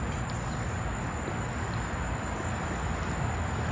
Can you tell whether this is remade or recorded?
recorded